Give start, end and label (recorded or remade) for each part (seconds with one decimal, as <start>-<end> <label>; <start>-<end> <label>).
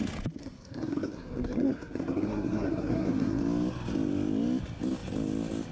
0.0-0.4 recorded; 0.4-3.4 remade; 3.4-5.7 recorded